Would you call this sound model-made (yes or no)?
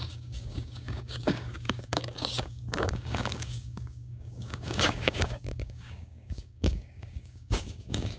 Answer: yes